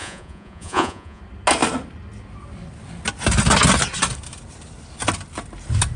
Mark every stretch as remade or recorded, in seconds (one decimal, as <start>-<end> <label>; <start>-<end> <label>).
0.0-1.2 remade; 1.2-6.0 recorded